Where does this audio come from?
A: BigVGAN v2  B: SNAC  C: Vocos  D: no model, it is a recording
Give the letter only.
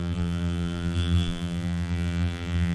A